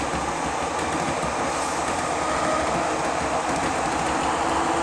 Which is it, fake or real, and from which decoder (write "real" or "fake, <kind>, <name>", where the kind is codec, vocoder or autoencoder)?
real